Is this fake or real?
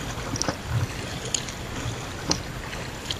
real